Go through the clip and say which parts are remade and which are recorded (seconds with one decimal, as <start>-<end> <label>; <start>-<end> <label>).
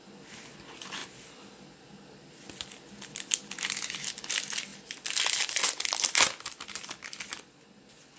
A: 0.0-8.2 recorded